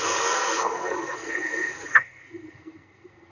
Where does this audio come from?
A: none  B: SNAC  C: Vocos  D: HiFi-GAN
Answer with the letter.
B